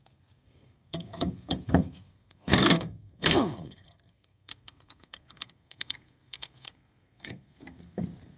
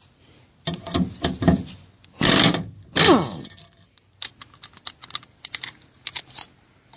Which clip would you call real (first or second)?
second